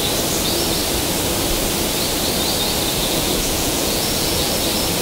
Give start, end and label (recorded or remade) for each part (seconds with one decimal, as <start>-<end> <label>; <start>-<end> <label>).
0.0-3.0 recorded; 3.0-4.5 remade; 4.5-5.0 recorded